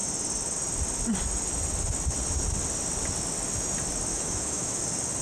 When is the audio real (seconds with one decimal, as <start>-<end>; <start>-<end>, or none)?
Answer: 0.0-4.1; 4.8-5.2